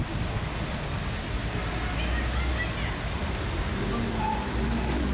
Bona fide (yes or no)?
yes